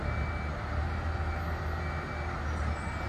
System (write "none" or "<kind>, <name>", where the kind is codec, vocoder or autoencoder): none